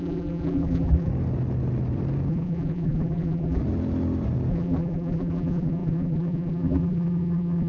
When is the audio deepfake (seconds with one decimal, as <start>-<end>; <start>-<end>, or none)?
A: 0.0-1.1; 2.3-3.6; 4.5-7.7